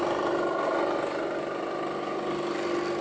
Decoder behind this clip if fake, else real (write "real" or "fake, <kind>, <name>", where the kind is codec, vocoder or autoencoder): real